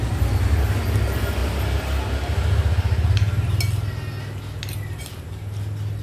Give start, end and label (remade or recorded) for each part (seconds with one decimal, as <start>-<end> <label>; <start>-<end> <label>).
0.0-6.0 recorded